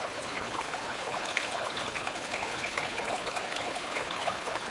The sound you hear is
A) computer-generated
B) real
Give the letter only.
A